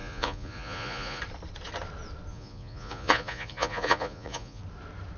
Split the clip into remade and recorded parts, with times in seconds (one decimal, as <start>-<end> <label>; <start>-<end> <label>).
0.0-1.2 remade; 1.2-2.3 recorded; 2.3-4.6 remade; 4.6-5.2 recorded